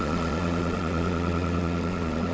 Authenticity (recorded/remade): remade